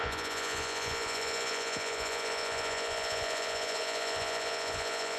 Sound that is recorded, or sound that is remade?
remade